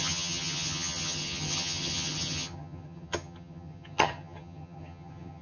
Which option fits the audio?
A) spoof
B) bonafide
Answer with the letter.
A